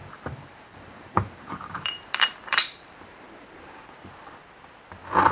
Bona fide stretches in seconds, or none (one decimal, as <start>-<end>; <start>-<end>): 3.2-5.3